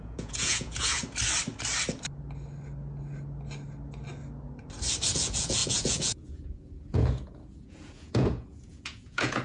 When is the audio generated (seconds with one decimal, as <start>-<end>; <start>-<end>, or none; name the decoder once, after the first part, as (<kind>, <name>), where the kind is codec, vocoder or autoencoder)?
0.0-1.0 (vocoder, Vocos); 5.1-9.4